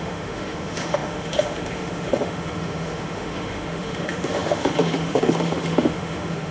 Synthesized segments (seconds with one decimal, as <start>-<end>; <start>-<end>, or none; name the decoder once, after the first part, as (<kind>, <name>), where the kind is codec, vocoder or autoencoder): 0.0-6.5 (autoencoder, DAC-VAE)